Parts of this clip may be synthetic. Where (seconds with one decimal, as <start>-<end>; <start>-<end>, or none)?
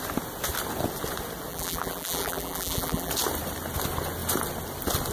1.5-3.1